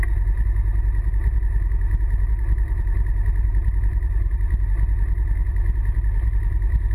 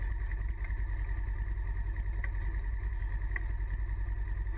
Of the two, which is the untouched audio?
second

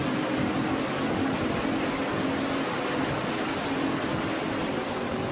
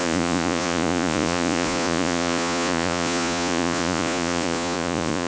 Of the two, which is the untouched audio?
first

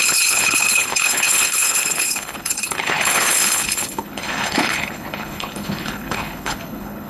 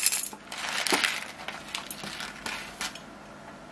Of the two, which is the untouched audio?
second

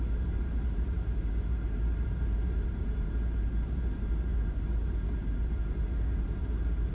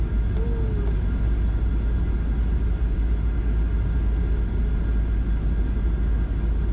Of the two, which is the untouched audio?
second